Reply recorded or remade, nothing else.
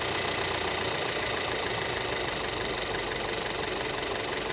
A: recorded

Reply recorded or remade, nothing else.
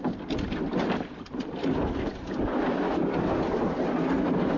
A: recorded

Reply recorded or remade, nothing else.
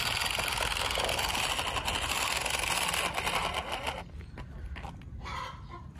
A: recorded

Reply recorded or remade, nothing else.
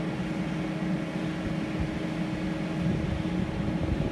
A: recorded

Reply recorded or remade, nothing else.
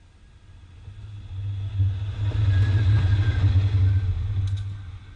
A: recorded